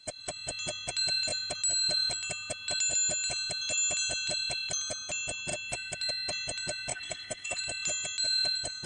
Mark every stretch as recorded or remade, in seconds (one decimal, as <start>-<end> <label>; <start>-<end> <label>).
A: 0.0-6.9 recorded; 6.9-7.6 remade; 7.6-8.9 recorded